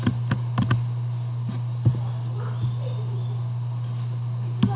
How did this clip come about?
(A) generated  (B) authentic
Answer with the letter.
B